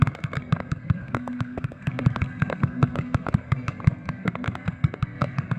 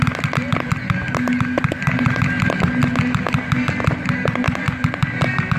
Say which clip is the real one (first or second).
second